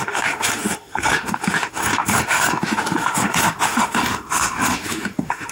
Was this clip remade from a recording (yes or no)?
yes